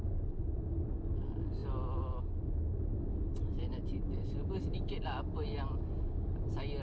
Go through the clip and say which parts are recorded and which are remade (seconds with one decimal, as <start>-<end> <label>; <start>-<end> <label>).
0.0-6.8 recorded